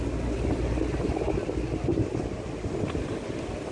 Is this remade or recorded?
recorded